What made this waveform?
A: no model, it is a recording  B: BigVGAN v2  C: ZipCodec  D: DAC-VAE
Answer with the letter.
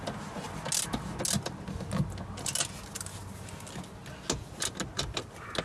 A